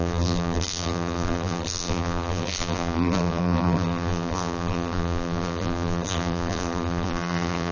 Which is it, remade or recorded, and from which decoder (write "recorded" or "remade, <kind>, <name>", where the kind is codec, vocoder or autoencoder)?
remade, vocoder, BigVGAN v2